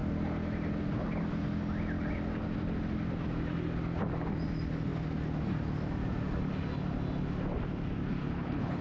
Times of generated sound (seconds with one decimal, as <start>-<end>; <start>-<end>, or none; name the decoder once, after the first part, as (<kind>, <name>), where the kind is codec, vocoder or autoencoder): 8.2-8.8 (codec, HILCodec)